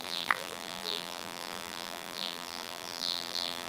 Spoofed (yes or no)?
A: yes